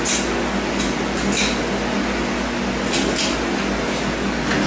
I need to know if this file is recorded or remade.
recorded